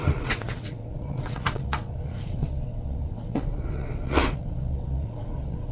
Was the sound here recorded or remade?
remade